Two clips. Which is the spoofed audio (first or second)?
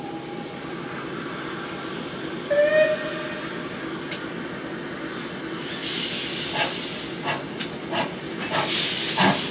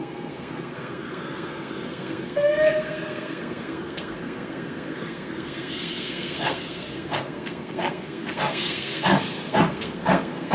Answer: second